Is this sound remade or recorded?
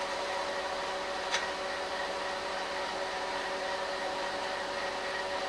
recorded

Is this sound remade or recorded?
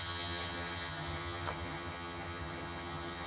remade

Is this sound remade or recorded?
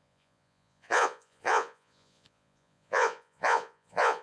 remade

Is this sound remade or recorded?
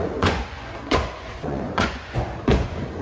remade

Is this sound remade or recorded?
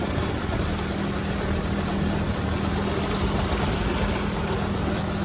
recorded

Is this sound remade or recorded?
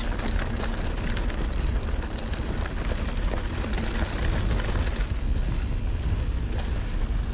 recorded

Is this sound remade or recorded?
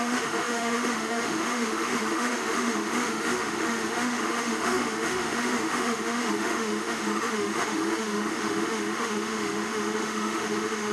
remade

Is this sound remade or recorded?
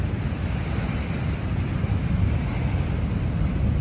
recorded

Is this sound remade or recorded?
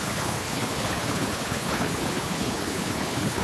remade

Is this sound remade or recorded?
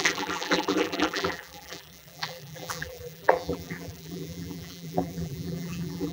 remade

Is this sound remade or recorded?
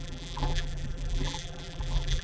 remade